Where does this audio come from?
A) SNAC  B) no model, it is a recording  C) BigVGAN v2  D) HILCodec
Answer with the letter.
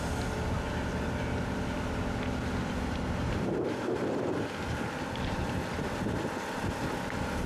B